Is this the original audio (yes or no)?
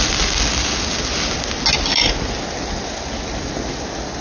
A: yes